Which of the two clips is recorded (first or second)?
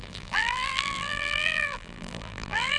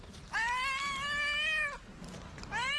second